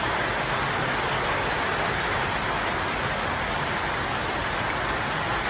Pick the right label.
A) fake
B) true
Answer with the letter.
B